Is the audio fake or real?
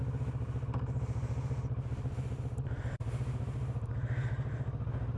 real